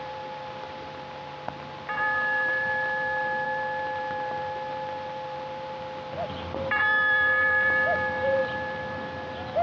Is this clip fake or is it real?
real